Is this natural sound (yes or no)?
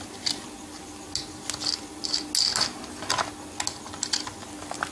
yes